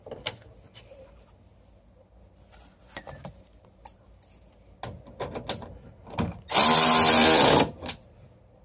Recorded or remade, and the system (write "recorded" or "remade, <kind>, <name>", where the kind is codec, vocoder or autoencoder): recorded